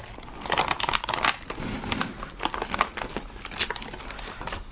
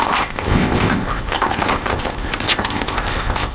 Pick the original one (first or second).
first